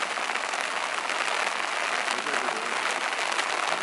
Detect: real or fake real